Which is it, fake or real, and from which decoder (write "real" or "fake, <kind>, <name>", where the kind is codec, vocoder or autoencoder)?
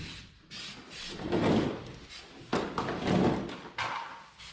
real